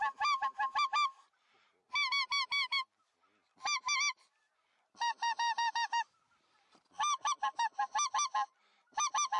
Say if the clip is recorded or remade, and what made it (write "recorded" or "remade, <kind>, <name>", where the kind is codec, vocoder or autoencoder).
recorded